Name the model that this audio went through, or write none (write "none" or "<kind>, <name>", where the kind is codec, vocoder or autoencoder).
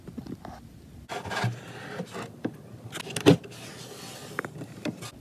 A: none